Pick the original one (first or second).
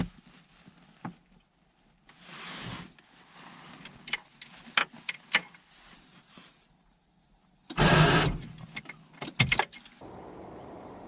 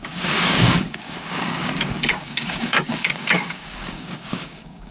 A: first